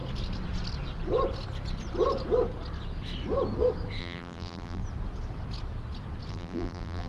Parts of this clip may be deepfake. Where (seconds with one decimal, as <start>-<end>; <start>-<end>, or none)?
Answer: 4.0-4.8; 6.3-7.1